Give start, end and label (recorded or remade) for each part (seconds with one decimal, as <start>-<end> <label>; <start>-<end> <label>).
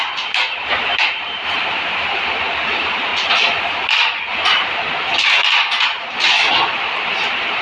0.0-3.1 remade; 3.1-7.1 recorded; 7.1-7.6 remade